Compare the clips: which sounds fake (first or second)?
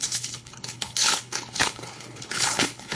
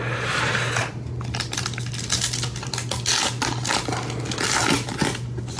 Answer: first